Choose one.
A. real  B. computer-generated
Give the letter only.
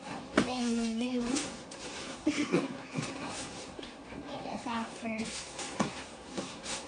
B